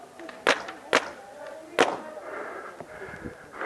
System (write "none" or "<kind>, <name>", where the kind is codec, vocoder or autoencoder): none